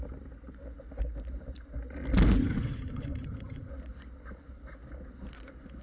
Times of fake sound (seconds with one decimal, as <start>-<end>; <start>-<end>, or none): 2.4-3.7